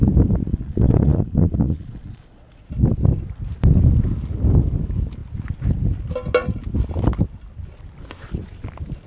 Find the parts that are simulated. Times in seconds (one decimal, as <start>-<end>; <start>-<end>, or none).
0.5-2.7

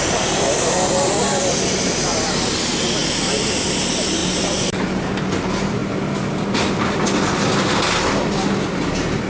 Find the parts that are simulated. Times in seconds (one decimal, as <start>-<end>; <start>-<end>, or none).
3.0-3.6; 4.2-5.1